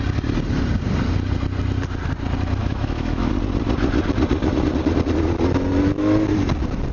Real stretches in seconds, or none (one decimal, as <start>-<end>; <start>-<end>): 0.0-2.6; 3.3-6.9